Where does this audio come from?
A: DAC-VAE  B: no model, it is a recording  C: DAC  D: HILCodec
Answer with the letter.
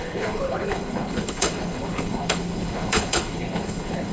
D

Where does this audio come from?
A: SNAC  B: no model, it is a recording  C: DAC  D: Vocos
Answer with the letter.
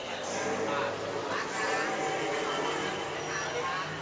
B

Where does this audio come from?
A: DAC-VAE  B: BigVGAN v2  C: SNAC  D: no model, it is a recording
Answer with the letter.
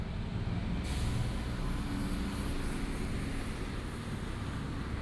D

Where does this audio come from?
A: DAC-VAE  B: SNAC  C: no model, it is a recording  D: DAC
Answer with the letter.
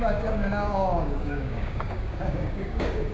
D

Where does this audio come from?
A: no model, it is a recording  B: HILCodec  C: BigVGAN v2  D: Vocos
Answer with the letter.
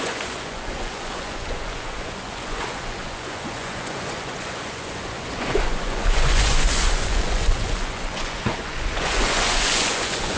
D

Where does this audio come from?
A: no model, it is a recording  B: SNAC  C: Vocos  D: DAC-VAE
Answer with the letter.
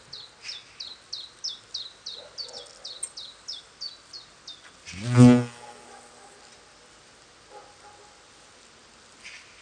A